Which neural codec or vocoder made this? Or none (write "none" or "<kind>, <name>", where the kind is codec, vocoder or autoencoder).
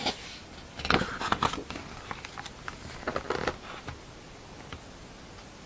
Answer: none